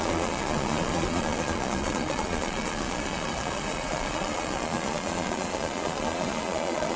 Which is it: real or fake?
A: fake